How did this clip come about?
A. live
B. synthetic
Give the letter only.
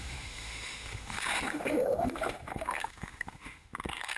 B